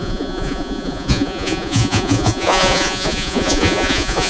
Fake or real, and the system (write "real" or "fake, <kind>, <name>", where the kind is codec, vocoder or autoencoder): fake, vocoder, Vocos